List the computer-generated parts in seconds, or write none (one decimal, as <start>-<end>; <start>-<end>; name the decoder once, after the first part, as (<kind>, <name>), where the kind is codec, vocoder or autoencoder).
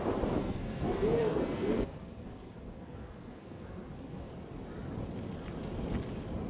0.4-4.3 (codec, SNAC)